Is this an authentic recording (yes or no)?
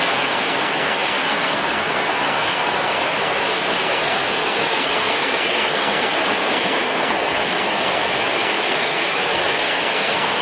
no